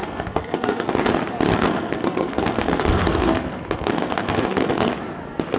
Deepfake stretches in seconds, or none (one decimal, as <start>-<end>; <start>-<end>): 0.0-1.0; 1.5-4.9